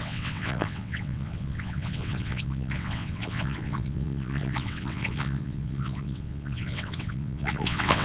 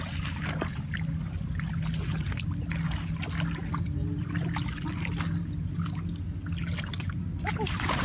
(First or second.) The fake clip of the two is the first